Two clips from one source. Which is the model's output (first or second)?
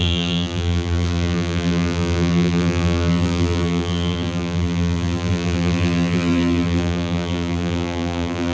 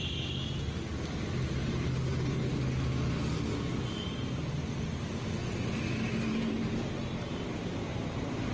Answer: first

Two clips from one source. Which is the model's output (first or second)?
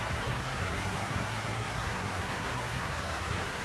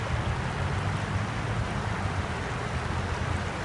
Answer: first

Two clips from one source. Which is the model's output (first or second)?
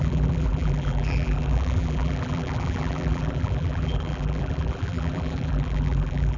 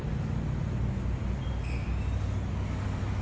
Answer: first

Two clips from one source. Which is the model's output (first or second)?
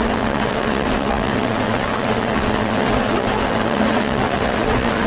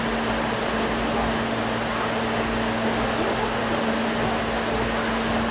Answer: first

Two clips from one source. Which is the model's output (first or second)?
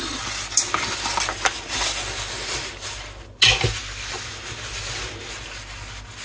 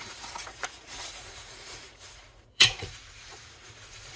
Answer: second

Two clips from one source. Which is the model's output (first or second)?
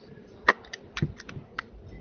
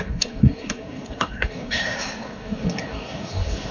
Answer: second